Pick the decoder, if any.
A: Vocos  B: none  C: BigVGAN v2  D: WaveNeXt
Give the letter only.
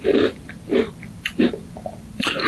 C